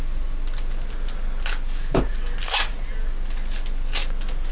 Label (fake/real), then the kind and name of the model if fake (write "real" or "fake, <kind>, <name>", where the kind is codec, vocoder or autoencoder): real